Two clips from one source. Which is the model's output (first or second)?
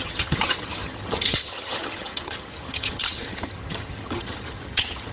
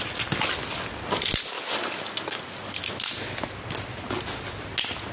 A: first